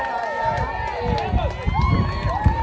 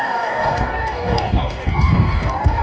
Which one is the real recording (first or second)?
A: first